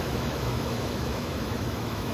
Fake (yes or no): yes